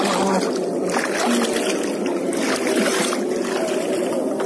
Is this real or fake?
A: real